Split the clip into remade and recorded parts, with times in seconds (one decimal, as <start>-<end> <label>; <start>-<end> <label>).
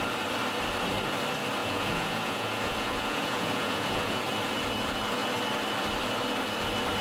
0.0-1.6 recorded; 1.6-4.2 remade; 4.2-7.0 recorded